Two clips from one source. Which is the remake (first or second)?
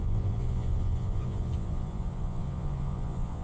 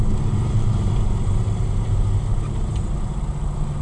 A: first